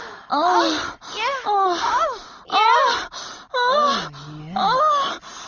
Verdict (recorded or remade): recorded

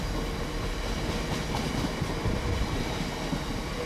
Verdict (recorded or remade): recorded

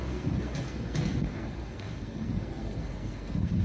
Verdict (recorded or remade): remade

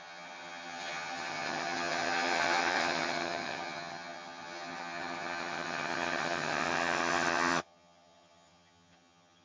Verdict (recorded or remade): remade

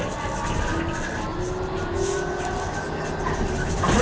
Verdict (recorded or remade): recorded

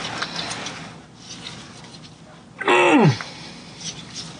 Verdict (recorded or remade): recorded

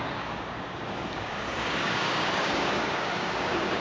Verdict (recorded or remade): remade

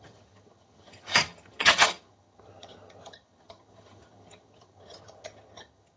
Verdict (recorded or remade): remade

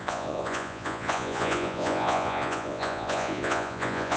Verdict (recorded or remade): remade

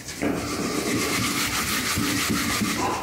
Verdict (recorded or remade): recorded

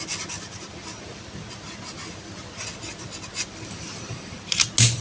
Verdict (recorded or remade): recorded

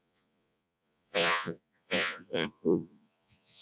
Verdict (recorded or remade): remade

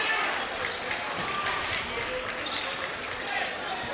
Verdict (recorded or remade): recorded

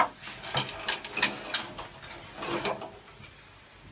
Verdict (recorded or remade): recorded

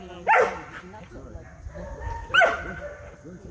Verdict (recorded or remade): recorded